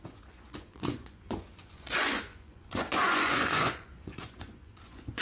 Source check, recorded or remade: remade